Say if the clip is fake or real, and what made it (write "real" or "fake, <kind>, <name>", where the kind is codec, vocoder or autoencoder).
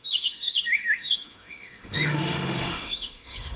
fake, autoencoder, DAC-VAE